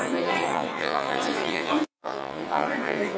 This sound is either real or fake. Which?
fake